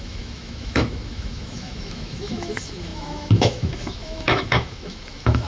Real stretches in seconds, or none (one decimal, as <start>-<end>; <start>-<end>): none